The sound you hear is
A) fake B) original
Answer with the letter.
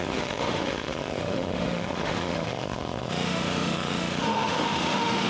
A